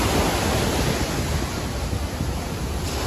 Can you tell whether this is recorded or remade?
recorded